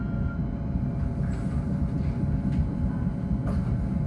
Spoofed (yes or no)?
no